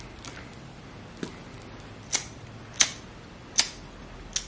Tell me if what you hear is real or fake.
real